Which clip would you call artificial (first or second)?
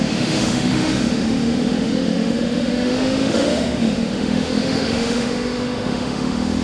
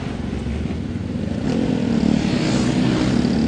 first